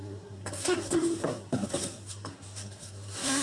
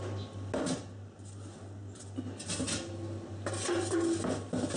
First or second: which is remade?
first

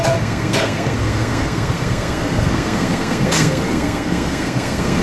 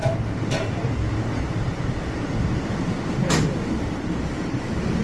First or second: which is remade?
first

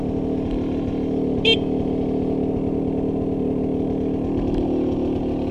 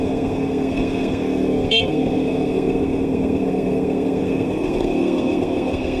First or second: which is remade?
second